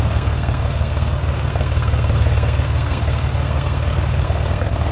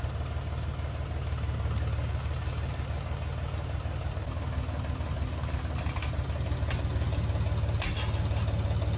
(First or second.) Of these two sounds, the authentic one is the second